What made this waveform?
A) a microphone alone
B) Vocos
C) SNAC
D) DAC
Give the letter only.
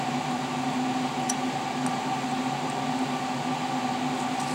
A